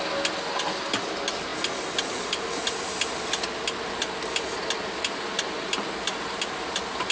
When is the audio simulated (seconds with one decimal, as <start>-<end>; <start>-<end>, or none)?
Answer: none